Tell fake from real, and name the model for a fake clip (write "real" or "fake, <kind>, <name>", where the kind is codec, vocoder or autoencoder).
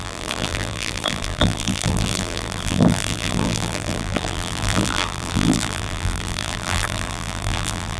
fake, vocoder, BigVGAN v2